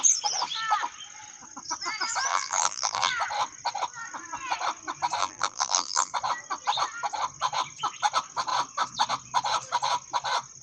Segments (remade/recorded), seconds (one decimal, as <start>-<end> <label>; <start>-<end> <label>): 0.0-2.3 recorded; 2.3-3.1 remade; 3.1-5.2 recorded; 5.2-6.1 remade; 6.1-10.6 recorded